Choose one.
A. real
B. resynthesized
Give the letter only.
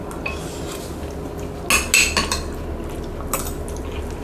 A